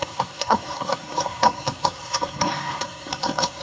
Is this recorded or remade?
remade